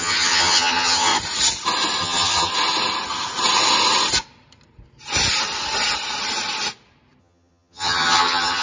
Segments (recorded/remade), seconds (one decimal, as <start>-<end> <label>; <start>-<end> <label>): 0.0-1.1 remade; 1.1-2.0 recorded; 2.0-2.5 remade; 2.5-7.2 recorded; 7.2-8.6 remade